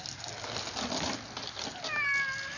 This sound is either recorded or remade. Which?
recorded